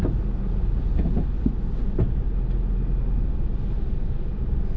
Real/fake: real